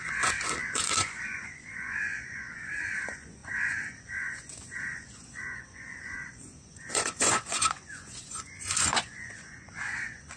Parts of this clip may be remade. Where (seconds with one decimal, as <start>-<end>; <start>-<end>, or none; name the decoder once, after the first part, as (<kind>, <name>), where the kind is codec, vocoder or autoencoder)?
0.0-10.4 (vocoder, Vocos)

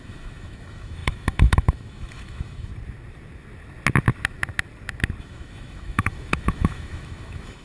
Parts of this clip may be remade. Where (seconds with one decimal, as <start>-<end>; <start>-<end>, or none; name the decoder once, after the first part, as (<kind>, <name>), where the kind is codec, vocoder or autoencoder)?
0.0-2.7 (autoencoder, DAC-VAE); 5.2-7.6

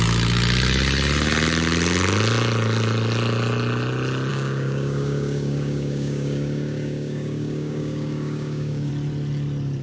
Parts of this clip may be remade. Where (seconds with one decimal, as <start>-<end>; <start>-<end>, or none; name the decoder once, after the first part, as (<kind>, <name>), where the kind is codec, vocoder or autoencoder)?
4.3-8.9 (codec, DAC)

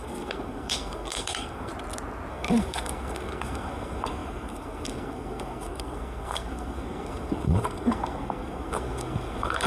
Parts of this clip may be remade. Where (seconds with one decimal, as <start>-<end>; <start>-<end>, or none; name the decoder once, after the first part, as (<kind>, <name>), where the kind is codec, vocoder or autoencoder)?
0.0-1.7 (codec, SNAC); 2.3-9.7

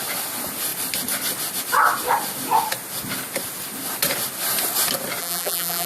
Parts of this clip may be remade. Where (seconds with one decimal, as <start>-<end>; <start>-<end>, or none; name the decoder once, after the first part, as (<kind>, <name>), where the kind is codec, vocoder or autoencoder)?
5.2-5.9 (vocoder, BigVGAN v2)

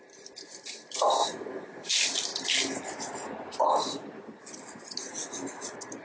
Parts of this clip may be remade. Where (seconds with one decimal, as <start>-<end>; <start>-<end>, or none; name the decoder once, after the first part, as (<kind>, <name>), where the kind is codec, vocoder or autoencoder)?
none